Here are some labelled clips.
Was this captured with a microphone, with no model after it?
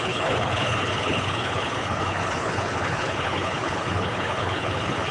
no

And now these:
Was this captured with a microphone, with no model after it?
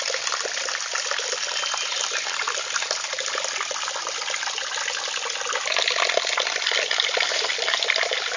yes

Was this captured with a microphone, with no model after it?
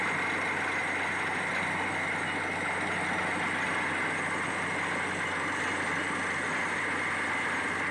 yes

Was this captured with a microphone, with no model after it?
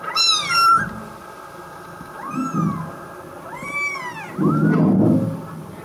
yes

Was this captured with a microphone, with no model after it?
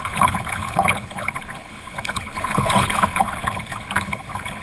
no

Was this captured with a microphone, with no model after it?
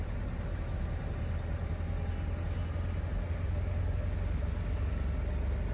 yes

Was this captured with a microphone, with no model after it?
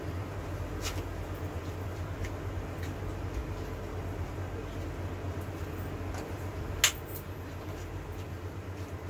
yes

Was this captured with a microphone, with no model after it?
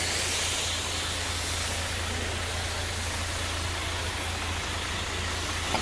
yes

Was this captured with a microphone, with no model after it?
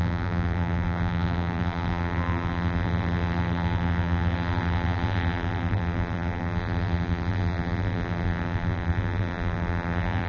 no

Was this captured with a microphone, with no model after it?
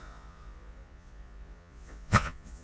no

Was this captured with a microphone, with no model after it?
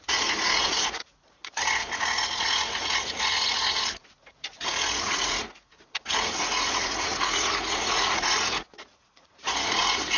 no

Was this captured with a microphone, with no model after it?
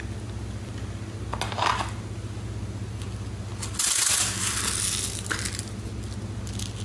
yes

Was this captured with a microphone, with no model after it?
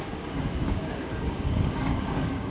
no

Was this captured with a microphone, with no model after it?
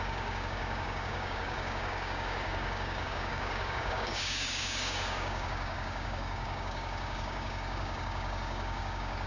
no